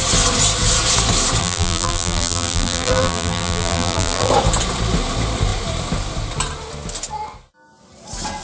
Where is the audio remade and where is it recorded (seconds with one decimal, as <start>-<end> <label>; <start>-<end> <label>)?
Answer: 0.0-1.4 recorded; 1.4-4.3 remade; 4.3-8.4 recorded